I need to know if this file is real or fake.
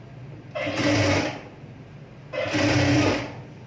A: real